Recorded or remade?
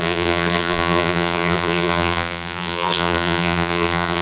remade